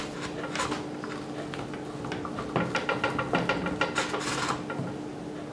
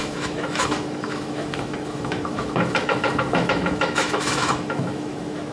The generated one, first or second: second